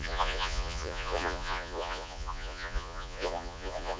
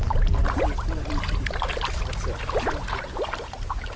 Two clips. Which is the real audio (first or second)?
second